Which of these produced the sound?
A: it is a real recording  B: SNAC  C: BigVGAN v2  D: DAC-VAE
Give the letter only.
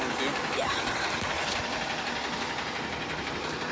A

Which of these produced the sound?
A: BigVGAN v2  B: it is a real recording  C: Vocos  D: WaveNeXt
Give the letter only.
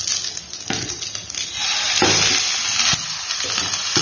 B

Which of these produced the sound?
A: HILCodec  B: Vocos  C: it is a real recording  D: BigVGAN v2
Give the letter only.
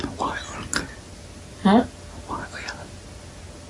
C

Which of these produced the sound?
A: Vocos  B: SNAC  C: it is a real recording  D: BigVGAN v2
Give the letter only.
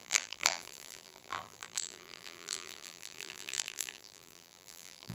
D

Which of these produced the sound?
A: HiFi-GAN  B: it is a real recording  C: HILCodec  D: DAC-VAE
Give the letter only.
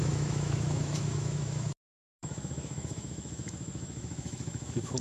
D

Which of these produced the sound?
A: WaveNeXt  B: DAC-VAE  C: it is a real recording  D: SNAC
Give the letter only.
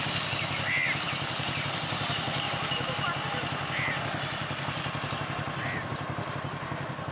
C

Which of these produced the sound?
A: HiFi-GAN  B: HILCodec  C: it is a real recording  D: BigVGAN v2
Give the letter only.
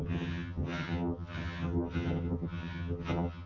A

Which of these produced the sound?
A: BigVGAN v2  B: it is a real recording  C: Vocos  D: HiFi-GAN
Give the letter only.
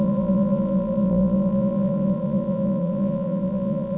C